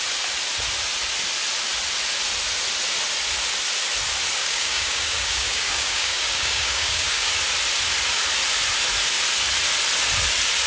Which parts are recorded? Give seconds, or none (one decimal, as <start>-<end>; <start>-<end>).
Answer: 0.0-4.4; 7.3-10.7